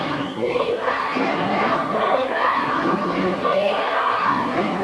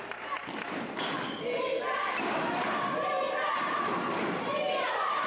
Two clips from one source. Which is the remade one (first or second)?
first